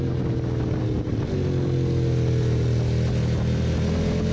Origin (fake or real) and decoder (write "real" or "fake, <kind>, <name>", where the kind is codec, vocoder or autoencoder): real